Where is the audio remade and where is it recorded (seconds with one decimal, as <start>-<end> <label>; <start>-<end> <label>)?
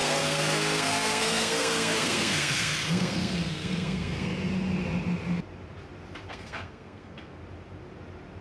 0.0-4.3 remade; 4.3-6.3 recorded; 6.3-7.4 remade; 7.4-8.4 recorded